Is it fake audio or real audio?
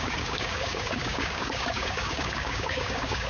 fake